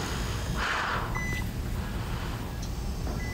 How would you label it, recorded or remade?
recorded